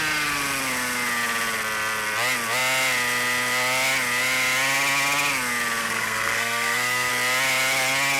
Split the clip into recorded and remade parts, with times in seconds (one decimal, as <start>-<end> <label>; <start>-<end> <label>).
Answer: 0.0-5.8 recorded; 5.8-7.1 remade; 7.1-8.2 recorded